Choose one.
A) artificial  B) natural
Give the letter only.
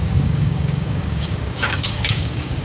A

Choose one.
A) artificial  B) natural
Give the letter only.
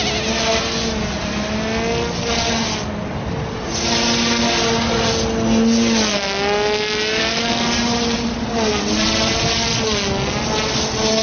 B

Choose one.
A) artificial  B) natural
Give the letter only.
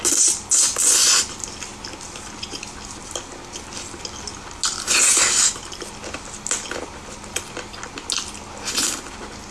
B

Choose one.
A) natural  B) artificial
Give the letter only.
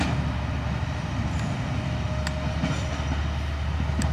A